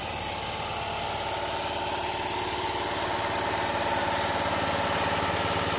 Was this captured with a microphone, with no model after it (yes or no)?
yes